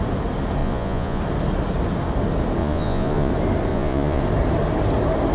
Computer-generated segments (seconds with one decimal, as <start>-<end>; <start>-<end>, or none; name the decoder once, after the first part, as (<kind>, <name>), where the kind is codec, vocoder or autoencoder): 0.6-1.2 (vocoder, Vocos); 2.6-3.3; 3.7-4.2

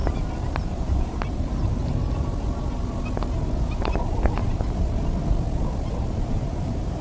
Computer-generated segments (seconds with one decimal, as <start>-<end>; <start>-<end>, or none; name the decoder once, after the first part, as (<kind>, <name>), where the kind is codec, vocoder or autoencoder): 0.7-1.8 (vocoder, BigVGAN v2); 6.0-7.0